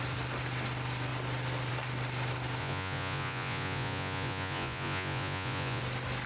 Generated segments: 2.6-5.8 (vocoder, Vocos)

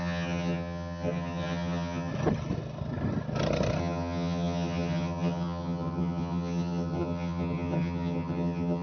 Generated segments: 0.0-2.1 (vocoder, HiFi-GAN); 3.8-8.8

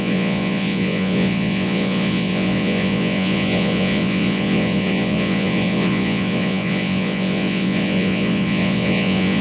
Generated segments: 0.0-9.4 (vocoder, Vocos)

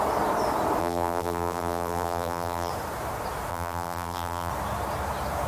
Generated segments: 0.8-2.7 (vocoder, BigVGAN v2); 3.5-4.5